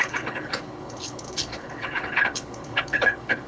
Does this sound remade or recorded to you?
remade